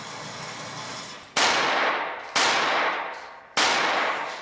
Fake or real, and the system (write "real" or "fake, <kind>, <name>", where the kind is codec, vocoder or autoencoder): real